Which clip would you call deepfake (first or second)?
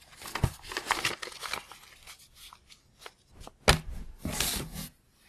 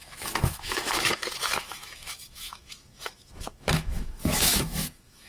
second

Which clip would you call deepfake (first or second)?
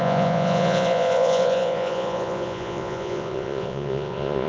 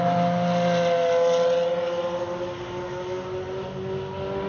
first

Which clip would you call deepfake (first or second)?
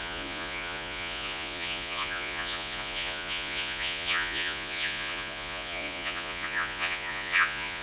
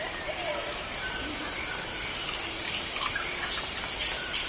first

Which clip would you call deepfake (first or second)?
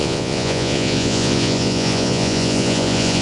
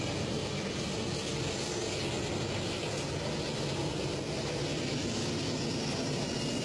first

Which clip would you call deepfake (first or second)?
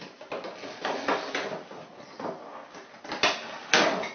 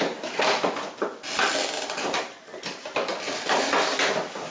second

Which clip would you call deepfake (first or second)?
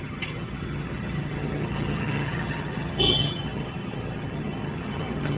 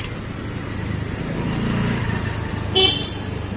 first